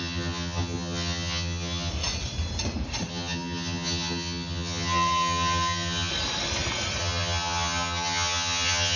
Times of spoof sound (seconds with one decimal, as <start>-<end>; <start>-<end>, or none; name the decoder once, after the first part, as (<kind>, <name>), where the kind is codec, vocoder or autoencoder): 0.0-1.9 (vocoder, HiFi-GAN); 3.1-6.1; 7.0-9.0